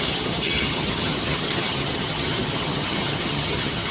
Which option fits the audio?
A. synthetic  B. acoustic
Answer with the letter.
A